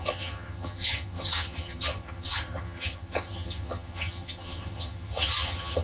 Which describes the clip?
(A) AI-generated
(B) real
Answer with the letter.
A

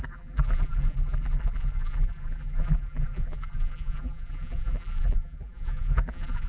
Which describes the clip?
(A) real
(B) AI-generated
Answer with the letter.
B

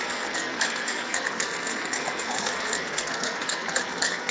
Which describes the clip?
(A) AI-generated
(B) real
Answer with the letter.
A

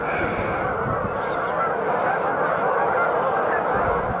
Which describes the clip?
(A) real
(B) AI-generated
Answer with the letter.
A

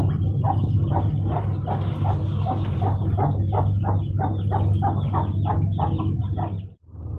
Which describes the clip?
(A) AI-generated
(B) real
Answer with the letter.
B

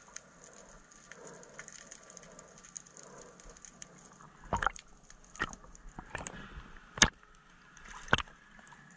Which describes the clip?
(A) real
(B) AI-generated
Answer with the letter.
A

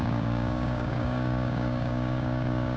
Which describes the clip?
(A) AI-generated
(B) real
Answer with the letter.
A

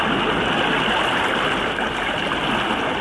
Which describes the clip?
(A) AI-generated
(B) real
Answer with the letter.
B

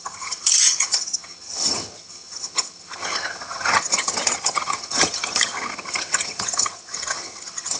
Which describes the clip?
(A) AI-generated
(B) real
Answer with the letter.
A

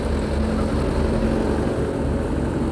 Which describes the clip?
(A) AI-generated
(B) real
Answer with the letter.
B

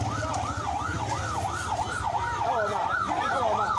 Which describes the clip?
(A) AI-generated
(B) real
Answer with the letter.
B